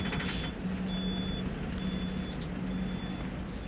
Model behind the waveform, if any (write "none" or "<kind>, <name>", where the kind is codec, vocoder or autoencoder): none